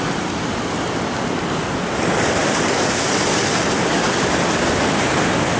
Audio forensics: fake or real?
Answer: real